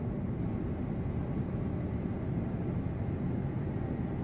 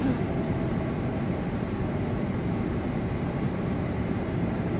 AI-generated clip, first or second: second